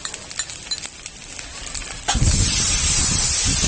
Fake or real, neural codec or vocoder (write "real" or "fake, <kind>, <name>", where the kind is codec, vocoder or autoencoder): real